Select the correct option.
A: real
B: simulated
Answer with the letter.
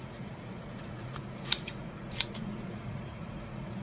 B